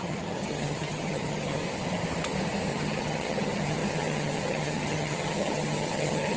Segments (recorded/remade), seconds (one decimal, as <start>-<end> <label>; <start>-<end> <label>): 0.0-1.6 remade; 1.6-2.7 recorded; 2.7-6.4 remade